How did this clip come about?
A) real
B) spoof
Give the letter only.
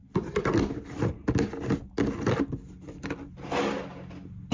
A